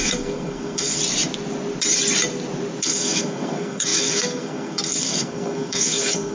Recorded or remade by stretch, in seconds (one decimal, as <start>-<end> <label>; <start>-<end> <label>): 0.0-1.0 remade; 1.0-2.8 recorded; 2.8-6.3 remade